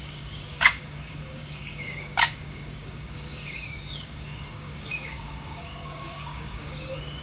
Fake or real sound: fake